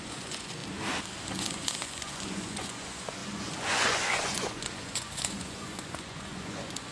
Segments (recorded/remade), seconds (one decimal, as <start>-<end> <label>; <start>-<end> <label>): 0.0-0.6 remade; 0.6-1.4 recorded; 1.4-6.9 remade

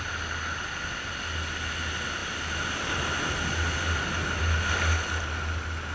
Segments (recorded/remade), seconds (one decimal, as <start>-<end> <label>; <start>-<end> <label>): 0.0-5.9 recorded

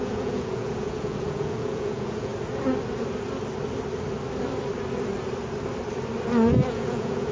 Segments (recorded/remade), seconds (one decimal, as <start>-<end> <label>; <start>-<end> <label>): 0.0-2.3 remade; 2.3-6.7 recorded; 6.7-7.3 remade